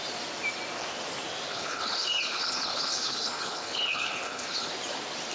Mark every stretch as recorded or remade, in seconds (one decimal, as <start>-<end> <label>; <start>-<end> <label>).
0.0-1.5 recorded; 1.5-4.7 remade; 4.7-5.3 recorded